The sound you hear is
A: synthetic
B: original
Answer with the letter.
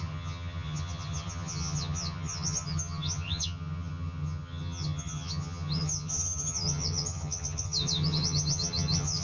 A